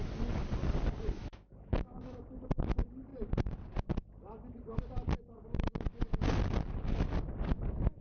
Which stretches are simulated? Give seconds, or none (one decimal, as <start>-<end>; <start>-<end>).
1.2-2.2